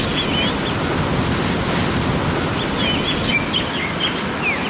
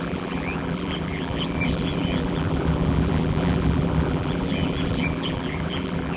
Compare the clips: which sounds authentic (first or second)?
first